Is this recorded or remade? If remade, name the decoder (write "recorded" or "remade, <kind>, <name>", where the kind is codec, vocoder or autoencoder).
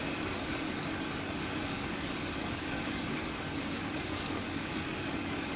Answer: remade, codec, DAC